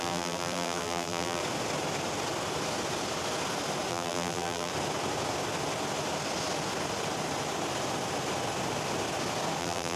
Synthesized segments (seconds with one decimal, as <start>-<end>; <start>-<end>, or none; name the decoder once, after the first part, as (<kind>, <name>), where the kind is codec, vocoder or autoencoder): 0.0-1.4 (vocoder, BigVGAN v2); 3.9-4.7; 9.6-10.0